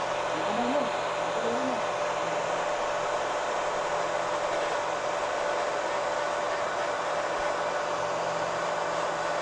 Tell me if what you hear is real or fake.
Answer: real